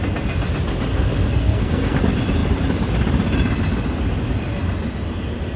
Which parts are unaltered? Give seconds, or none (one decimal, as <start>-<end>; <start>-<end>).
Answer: 0.0-0.9; 2.0-5.6